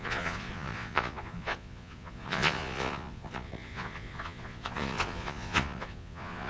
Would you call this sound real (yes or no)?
no